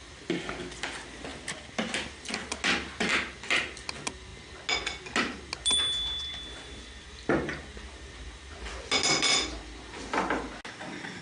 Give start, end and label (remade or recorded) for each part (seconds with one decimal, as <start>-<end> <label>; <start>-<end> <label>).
0.0-11.2 recorded